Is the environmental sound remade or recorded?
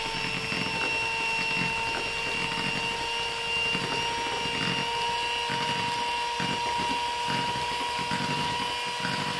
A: recorded